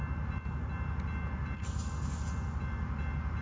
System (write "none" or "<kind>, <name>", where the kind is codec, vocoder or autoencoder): none